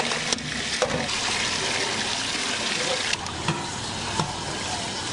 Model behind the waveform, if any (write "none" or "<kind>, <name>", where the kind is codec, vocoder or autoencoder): none